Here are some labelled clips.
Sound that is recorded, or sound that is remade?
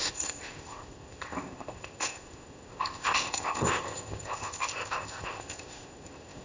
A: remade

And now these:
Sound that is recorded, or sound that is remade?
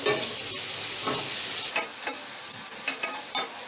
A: recorded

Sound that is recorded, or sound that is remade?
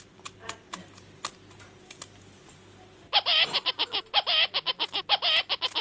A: recorded